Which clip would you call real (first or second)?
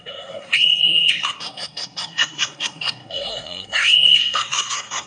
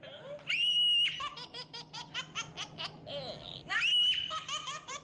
second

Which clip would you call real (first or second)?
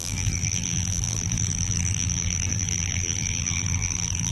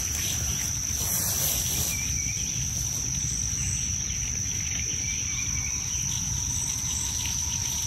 second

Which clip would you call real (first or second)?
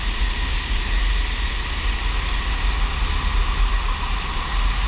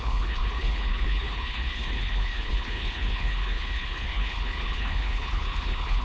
first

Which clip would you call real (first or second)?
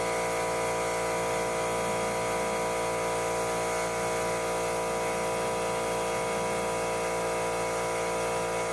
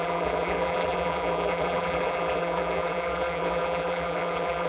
first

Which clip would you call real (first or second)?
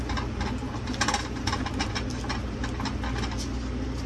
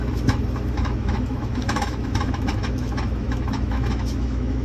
first